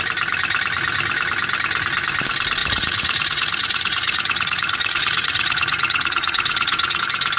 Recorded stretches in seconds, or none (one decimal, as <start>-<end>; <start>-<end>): 0.0-2.6; 7.0-7.4